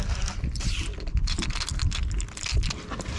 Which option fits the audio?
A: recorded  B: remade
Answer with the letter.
A